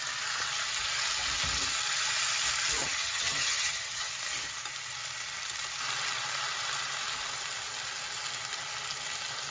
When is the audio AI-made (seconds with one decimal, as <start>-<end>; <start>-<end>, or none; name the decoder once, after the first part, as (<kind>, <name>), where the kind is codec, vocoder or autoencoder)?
2.8-4.1 (vocoder, HiFi-GAN)